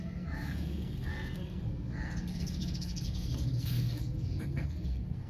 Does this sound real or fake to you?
fake